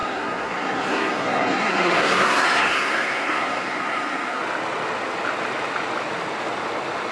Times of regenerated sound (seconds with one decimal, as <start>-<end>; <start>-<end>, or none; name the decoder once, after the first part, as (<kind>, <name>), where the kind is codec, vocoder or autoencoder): 0.0-4.4 (codec, SNAC)